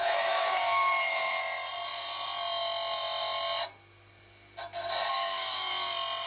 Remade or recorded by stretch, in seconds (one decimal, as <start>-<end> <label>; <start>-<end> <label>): 0.0-1.4 remade; 1.4-5.1 recorded; 5.1-5.7 remade; 5.7-6.3 recorded